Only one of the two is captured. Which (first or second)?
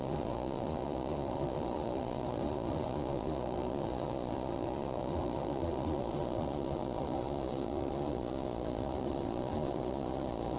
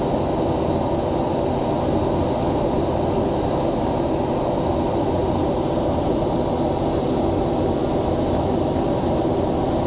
second